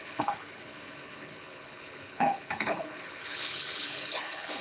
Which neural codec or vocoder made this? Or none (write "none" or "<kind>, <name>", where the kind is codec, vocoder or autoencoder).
codec, HILCodec